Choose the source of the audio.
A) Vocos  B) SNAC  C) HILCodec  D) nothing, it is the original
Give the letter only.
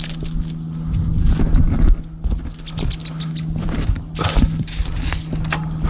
D